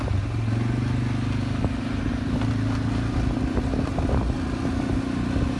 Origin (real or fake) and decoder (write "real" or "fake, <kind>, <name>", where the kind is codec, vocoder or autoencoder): real